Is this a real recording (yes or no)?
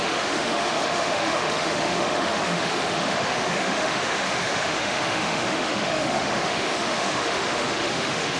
no